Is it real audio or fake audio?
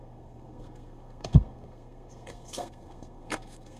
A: fake